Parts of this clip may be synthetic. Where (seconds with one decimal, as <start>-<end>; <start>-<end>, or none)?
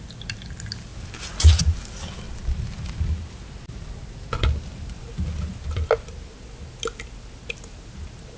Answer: none